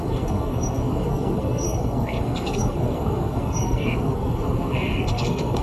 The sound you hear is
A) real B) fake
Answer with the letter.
B